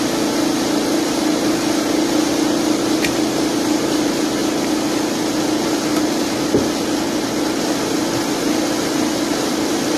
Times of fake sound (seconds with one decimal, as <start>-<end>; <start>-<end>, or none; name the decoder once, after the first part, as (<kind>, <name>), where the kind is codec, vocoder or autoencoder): 0.0-1.2 (vocoder, BigVGAN v2); 2.3-4.4; 9.5-10.0